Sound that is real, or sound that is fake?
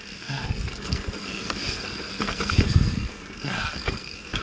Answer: fake